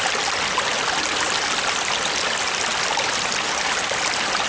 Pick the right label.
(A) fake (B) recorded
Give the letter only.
B